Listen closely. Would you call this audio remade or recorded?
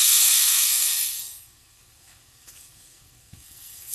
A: remade